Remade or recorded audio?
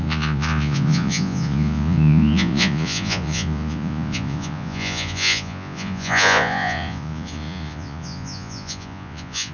remade